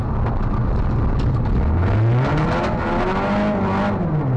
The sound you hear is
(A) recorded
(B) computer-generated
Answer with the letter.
A